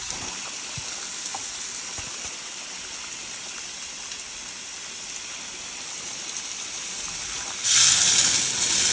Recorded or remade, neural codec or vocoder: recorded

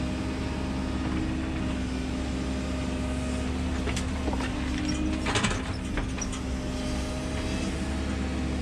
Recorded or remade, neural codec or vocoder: recorded